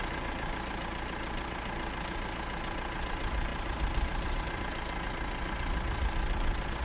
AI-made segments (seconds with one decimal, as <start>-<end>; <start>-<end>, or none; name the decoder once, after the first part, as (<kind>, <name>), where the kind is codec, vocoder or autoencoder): 3.5-4.4 (vocoder, BigVGAN v2)

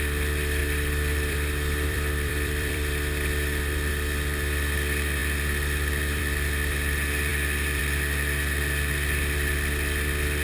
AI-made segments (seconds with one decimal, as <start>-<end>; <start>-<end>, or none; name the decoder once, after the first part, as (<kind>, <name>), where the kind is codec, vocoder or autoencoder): 0.6-3.9 (vocoder, BigVGAN v2)

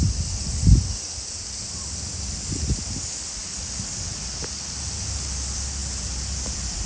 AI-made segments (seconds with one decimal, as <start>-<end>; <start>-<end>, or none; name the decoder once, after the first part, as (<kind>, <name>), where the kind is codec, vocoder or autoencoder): none

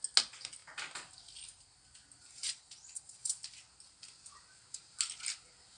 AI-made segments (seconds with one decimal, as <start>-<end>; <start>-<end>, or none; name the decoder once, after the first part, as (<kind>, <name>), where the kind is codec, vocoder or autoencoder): 2.2-3.3 (vocoder, BigVGAN v2)

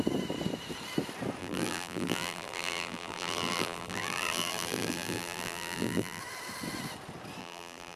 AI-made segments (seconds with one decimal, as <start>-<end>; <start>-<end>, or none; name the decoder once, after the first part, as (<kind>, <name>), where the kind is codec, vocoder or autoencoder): 1.4-6.2 (vocoder, BigVGAN v2); 7.4-8.0

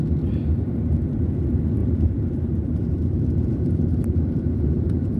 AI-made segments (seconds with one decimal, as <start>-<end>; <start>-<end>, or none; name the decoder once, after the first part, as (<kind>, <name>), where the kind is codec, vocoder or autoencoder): 1.8-5.2 (vocoder, BigVGAN v2)

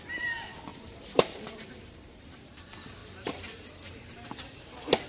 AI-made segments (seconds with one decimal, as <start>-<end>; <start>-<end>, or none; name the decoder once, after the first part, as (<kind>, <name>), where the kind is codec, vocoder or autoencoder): 0.7-2.0 (vocoder, BigVGAN v2); 3.0-4.6

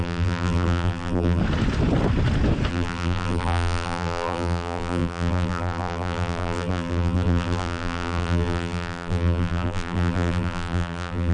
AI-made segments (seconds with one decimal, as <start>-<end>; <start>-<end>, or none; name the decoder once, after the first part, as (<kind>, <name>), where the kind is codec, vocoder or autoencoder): 0.0-1.4 (vocoder, BigVGAN v2); 2.7-11.3